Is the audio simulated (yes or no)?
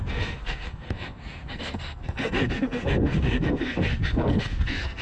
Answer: yes